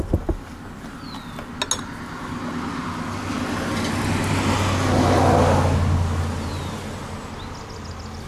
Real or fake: real